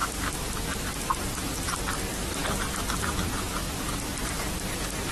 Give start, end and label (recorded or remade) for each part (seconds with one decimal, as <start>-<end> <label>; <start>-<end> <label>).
0.0-3.6 remade; 3.6-4.2 recorded; 4.2-5.1 remade